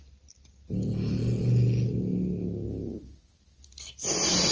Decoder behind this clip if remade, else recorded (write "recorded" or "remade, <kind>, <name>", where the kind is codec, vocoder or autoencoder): recorded